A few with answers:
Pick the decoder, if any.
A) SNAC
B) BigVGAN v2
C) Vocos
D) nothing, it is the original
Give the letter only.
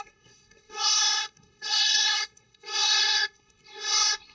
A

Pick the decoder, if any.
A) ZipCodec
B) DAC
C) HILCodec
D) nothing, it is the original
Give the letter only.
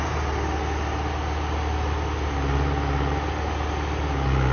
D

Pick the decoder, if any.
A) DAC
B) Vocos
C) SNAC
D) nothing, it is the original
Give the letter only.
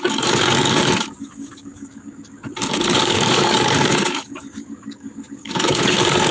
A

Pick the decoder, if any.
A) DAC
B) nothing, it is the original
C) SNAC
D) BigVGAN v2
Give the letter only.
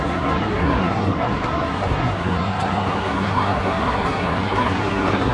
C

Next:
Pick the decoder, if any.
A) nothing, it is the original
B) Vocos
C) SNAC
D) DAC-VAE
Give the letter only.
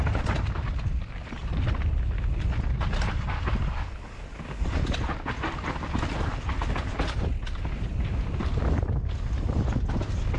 A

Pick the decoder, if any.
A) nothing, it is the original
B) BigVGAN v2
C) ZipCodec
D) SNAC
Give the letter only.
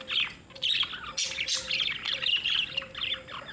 A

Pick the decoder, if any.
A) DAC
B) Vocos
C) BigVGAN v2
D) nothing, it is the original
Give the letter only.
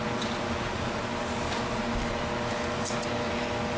D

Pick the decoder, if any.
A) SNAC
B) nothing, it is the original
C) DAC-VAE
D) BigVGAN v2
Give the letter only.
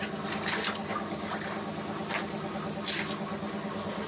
B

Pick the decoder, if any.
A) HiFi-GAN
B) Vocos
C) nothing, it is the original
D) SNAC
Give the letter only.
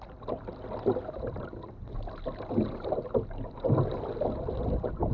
C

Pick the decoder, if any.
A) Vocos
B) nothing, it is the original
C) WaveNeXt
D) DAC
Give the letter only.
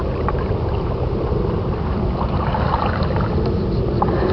B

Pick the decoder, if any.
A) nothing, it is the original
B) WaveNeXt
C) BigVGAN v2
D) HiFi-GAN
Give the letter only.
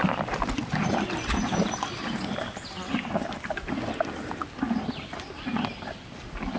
A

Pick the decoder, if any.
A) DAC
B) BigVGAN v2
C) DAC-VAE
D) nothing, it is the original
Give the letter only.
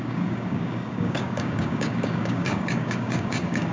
A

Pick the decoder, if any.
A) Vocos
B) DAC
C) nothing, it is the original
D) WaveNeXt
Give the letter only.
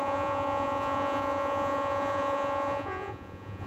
A